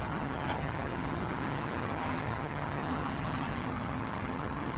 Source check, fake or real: fake